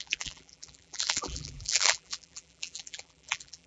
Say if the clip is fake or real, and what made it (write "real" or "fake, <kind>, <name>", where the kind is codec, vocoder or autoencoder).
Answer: fake, vocoder, BigVGAN v2